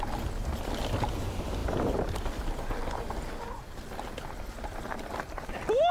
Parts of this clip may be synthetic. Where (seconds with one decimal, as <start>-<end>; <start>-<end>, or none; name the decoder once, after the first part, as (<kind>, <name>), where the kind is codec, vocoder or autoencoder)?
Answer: none